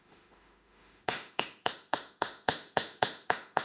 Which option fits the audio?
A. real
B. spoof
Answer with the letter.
B